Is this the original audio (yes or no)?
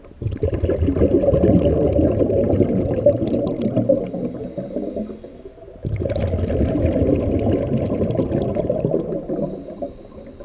yes